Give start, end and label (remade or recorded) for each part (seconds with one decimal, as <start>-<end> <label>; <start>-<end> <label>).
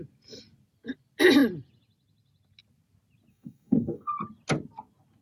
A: 0.0-3.3 recorded; 3.3-4.1 remade; 4.1-5.2 recorded